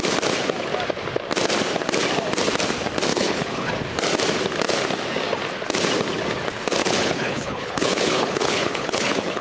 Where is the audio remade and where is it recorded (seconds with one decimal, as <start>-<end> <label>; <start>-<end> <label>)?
0.0-3.1 recorded; 3.1-3.7 remade; 3.7-6.8 recorded; 6.8-9.4 remade